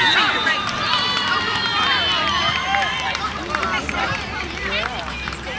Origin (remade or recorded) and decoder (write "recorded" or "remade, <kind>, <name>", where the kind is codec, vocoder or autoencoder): remade, vocoder, BigVGAN v2